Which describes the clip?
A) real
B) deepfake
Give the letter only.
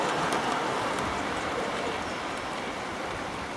A